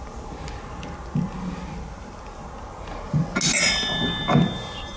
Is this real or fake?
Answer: real